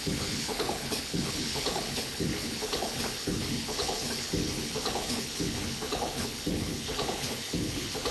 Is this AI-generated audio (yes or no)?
yes